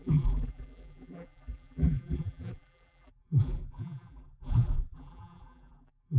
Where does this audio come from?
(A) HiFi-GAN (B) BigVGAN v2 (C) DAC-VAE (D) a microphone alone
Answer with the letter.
B